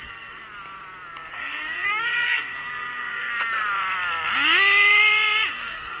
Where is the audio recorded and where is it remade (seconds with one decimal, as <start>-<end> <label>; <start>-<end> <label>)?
0.0-0.4 remade; 0.4-1.3 recorded; 1.3-3.3 remade; 3.3-5.5 recorded; 5.5-6.0 remade